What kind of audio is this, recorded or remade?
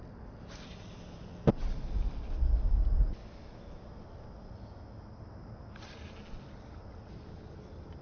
recorded